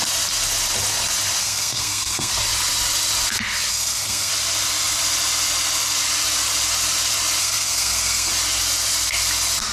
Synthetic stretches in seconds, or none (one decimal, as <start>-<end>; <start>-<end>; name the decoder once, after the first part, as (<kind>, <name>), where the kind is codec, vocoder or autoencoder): 1.4-2.3 (codec, SNAC); 3.7-4.3; 7.4-8.3